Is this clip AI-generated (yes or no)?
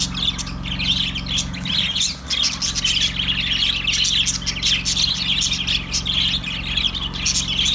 no